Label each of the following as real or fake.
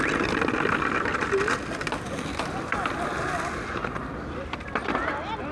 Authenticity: real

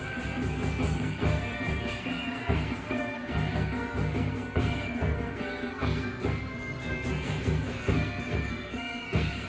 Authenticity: fake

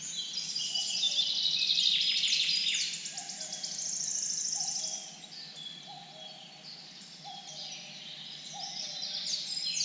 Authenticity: real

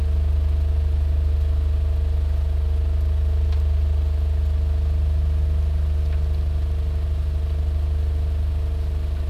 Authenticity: real